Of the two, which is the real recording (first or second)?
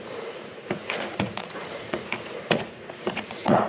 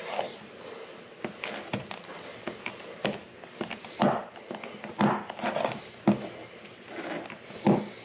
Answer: second